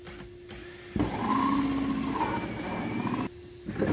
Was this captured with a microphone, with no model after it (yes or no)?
yes